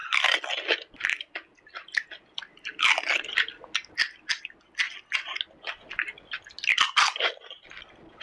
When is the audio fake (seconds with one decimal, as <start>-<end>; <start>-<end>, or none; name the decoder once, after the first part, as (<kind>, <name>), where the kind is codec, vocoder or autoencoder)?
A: none